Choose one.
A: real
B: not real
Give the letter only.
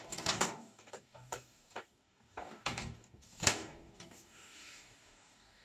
B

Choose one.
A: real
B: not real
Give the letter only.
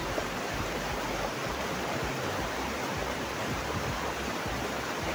B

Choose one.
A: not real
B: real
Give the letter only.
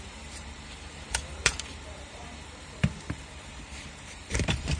A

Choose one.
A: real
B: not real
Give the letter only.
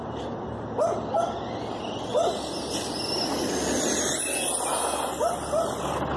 A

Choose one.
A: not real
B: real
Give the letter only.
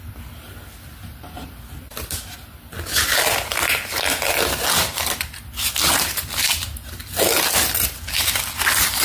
B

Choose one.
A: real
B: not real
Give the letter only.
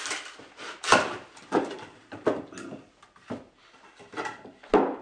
A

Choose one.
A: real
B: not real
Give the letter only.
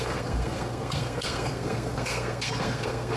B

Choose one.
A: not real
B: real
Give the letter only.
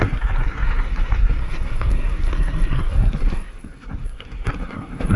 A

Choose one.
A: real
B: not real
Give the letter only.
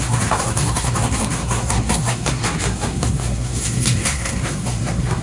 B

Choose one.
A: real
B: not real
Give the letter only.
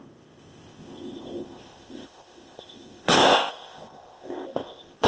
B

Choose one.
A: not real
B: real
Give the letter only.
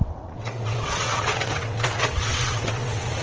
A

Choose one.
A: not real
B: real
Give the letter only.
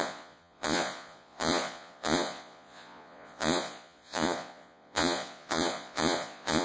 A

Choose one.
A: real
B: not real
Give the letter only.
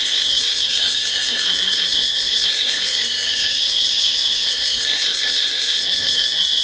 B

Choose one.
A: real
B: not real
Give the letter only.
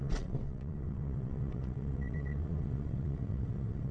B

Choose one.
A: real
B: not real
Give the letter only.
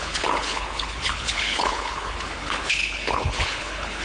B